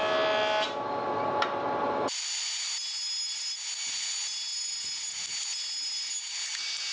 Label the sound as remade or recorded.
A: recorded